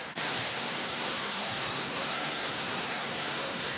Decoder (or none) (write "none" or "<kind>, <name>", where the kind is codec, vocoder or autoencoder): codec, SNAC